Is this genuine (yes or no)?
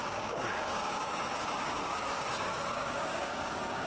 no